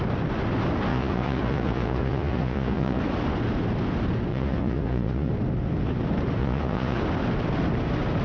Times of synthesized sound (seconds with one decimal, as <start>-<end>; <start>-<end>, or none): 0.9-3.0; 4.3-5.3; 6.4-7.0